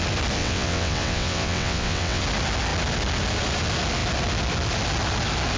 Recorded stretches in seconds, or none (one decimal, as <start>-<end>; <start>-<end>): 0.0-0.4; 2.2-5.6